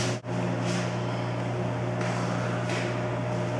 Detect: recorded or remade recorded